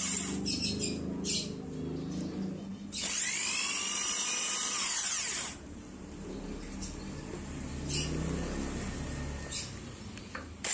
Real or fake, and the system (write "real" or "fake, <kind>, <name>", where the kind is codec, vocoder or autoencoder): real